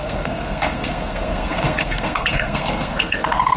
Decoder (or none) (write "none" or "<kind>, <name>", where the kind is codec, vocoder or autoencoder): codec, SNAC